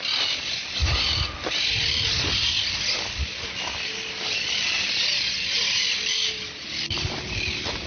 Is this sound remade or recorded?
recorded